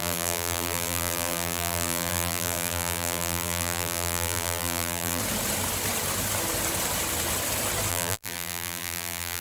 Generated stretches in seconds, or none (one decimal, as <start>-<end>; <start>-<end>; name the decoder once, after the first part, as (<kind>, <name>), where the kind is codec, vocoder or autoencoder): 0.0-5.2 (vocoder, BigVGAN v2); 7.9-9.4